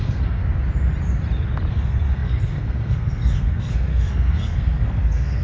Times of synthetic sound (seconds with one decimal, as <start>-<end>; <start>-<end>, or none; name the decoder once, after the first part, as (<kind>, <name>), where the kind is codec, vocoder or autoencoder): 0.0-0.4 (codec, SNAC); 1.7-5.4